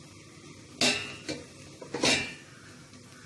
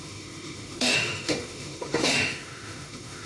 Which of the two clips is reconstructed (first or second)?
second